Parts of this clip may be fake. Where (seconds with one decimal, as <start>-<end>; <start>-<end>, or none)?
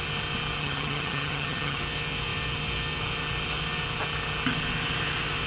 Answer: 0.6-1.8